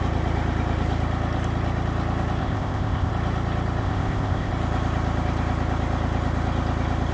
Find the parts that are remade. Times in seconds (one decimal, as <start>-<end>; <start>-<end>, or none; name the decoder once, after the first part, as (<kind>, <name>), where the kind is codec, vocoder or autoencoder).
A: 2.4-3.1 (codec, ZipCodec); 3.8-4.5